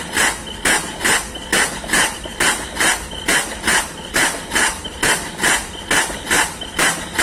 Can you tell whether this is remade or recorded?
recorded